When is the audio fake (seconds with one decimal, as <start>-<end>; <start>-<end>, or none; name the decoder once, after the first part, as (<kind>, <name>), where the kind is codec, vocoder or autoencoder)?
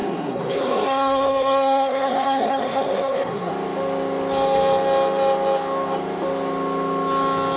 0.0-3.5 (codec, SNAC)